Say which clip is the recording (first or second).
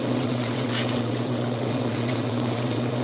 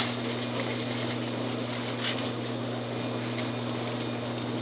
second